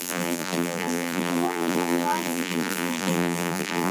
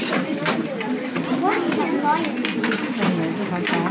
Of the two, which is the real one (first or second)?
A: second